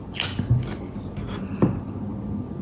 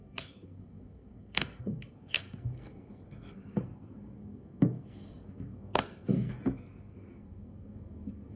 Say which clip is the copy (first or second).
second